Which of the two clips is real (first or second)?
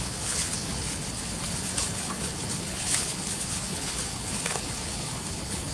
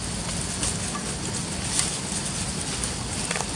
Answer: second